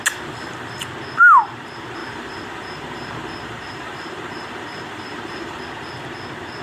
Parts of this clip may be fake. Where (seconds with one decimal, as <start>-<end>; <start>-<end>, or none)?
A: 2.0-5.6